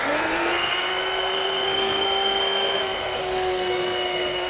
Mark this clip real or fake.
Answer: fake